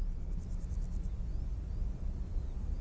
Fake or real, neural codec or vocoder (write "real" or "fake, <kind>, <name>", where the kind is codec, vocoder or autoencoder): real